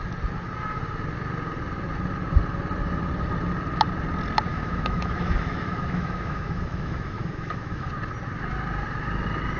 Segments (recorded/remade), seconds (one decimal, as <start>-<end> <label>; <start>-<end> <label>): 0.0-4.5 recorded; 4.5-7.9 remade; 7.9-9.6 recorded

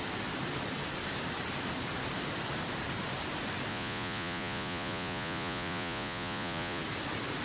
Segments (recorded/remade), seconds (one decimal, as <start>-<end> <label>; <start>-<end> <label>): 0.0-3.7 recorded; 3.7-6.8 remade; 6.8-7.4 recorded

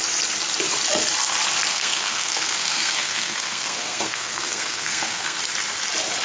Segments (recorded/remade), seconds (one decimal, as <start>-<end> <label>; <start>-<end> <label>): 0.0-1.7 recorded; 1.7-5.4 remade; 5.4-6.2 recorded